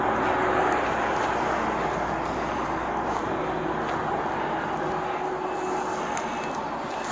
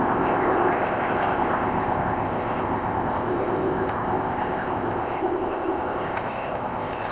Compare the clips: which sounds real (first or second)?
first